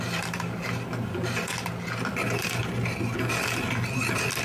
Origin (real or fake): real